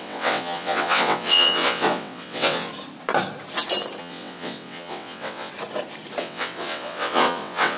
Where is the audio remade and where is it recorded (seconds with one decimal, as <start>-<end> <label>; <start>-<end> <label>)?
0.0-2.7 remade; 2.7-4.0 recorded; 4.0-5.5 remade; 5.5-6.2 recorded; 6.2-7.8 remade